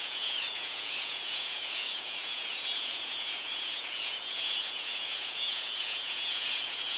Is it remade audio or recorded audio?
remade